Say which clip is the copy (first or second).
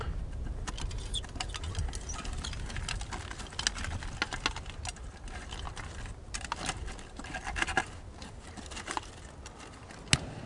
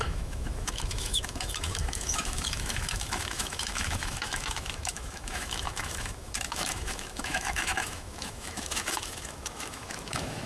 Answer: second